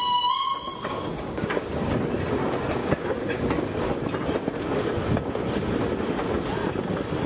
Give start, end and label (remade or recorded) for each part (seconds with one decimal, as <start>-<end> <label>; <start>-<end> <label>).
0.0-0.7 recorded; 0.7-1.6 remade; 1.6-2.8 recorded; 2.8-3.4 remade; 3.4-7.3 recorded